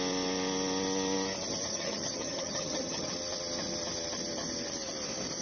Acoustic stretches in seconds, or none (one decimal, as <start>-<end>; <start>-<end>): 0.0-1.7; 3.1-5.4